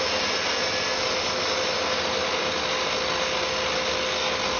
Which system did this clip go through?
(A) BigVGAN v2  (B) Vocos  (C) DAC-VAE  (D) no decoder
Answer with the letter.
D